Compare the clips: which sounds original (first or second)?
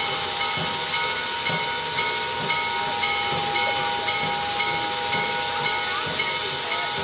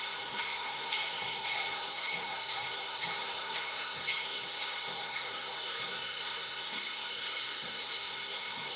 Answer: first